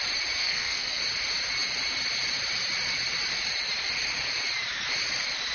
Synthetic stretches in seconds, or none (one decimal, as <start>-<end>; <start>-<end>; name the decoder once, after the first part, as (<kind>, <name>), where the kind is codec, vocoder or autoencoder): 0.4-1.0 (codec, SNAC)